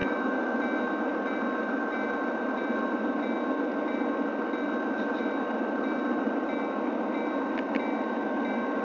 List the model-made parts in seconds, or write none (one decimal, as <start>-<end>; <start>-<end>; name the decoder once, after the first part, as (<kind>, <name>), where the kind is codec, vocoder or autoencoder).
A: 0.0-0.6 (autoencoder, DAC-VAE)